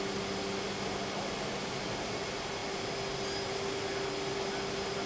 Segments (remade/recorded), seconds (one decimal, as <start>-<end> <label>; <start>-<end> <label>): 0.0-5.1 recorded